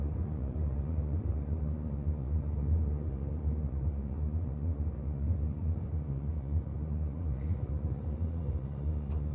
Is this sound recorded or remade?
remade